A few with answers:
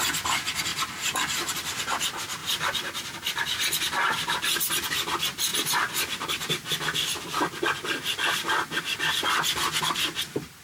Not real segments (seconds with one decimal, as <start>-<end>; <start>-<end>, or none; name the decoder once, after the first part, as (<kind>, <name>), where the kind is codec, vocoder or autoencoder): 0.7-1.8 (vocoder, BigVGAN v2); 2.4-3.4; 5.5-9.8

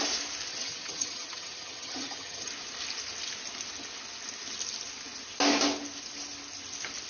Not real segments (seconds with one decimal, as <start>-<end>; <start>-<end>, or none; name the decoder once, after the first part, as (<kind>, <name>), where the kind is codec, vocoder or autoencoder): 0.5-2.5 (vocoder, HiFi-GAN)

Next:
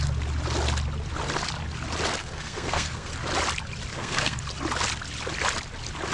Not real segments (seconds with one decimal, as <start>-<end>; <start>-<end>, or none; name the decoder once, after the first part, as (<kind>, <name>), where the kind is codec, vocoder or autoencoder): 2.2-3.1 (codec, SNAC); 3.9-4.4